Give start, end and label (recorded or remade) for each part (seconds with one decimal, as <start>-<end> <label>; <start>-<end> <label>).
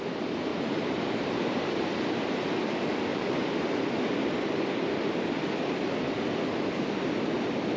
0.0-0.5 recorded; 0.5-1.9 remade; 1.9-3.1 recorded; 3.1-3.6 remade; 3.6-7.8 recorded